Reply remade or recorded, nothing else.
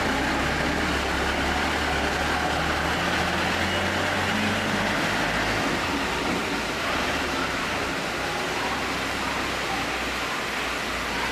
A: recorded